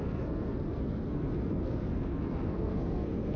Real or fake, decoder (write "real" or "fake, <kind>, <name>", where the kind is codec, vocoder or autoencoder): fake, codec, SNAC